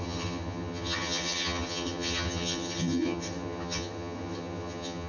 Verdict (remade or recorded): remade